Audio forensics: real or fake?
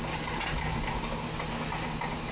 real